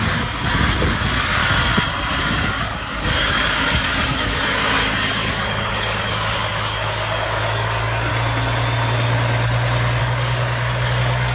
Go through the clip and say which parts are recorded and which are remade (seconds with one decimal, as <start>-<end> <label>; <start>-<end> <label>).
0.0-1.4 remade; 1.4-2.2 recorded; 2.2-8.1 remade; 8.1-10.0 recorded; 10.0-11.3 remade